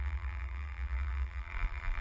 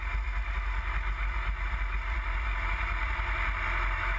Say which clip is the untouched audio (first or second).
second